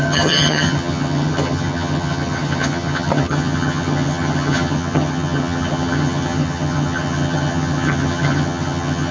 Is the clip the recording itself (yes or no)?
no